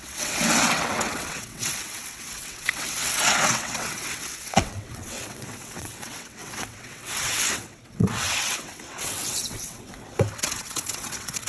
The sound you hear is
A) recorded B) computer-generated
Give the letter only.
B